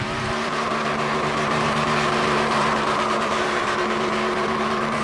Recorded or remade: remade